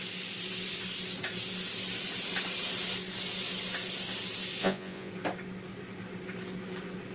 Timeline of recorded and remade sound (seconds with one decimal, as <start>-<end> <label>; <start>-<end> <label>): 0.0-4.6 recorded; 4.6-5.1 remade; 5.1-7.1 recorded